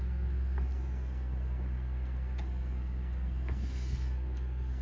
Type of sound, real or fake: fake